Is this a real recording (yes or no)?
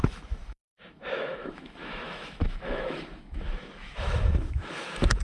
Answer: no